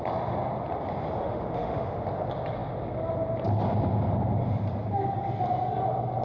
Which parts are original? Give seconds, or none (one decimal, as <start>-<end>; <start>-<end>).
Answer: 0.0-1.2; 2.0-6.2